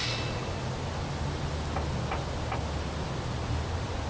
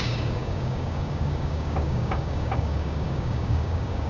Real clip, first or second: first